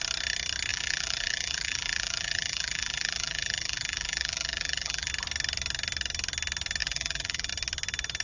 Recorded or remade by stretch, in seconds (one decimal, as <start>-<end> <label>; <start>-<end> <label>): 0.0-0.7 recorded; 0.7-5.1 remade; 5.1-6.8 recorded; 6.8-7.5 remade; 7.5-8.2 recorded